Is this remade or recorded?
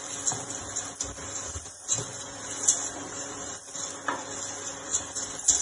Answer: recorded